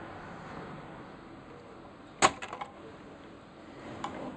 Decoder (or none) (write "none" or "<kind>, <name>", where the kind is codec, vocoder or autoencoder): none